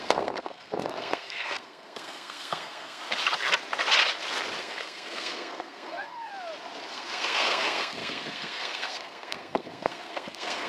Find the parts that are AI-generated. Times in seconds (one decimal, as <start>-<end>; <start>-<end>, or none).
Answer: 0.0-3.0; 4.6-6.3; 6.9-10.7